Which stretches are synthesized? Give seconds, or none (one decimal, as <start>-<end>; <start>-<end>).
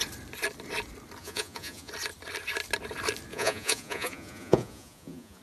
1.2-1.9; 3.3-5.4